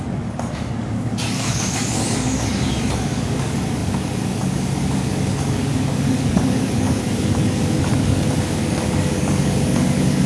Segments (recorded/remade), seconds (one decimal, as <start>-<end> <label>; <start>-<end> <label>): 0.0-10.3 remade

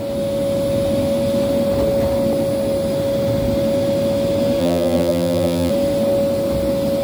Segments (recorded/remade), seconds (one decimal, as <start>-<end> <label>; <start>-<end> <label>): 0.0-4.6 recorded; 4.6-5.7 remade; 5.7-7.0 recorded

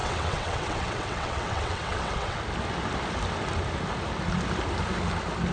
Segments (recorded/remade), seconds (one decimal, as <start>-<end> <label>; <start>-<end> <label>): 0.0-2.4 remade; 2.4-5.5 recorded

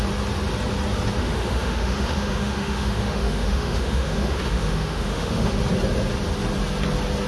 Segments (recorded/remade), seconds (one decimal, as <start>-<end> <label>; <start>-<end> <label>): 0.0-1.2 recorded; 1.2-5.6 remade; 5.6-7.3 recorded

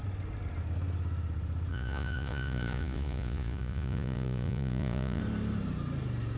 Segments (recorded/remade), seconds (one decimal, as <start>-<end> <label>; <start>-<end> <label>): 0.0-1.7 recorded; 1.7-5.2 remade; 5.2-6.4 recorded

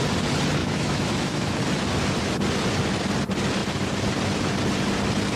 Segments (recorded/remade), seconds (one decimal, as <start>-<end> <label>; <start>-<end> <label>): 0.0-0.6 recorded; 0.6-1.6 remade; 1.6-5.4 recorded

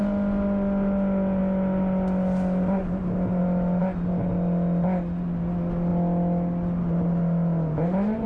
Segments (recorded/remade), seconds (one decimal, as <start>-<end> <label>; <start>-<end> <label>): 0.0-8.3 recorded

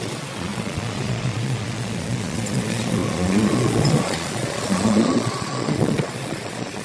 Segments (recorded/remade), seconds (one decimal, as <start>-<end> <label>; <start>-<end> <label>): 0.0-6.8 remade